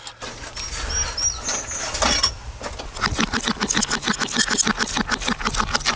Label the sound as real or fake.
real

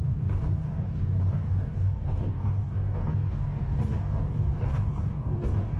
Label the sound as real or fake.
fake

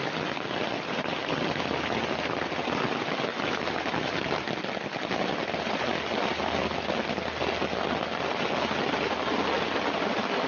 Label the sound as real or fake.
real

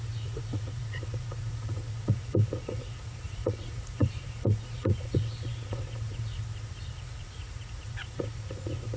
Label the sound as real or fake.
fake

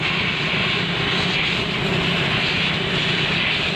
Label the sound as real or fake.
real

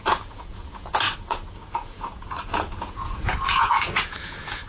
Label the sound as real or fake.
fake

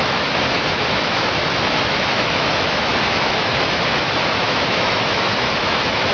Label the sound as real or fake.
fake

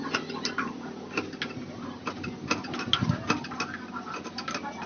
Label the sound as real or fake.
real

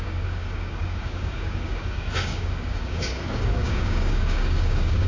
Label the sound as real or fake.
fake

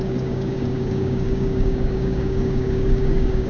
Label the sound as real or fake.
fake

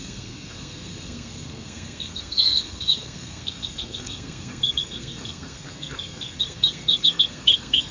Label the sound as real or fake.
fake